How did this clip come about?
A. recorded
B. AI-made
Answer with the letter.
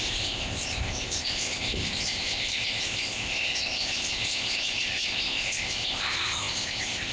B